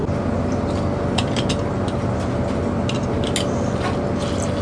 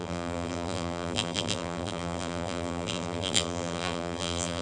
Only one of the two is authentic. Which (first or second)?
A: first